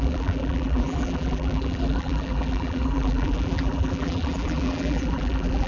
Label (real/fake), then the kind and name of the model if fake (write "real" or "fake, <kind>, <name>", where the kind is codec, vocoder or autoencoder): fake, vocoder, BigVGAN v2